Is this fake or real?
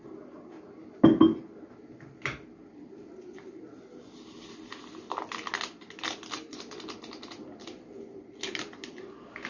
real